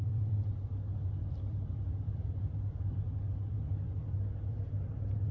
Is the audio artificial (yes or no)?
yes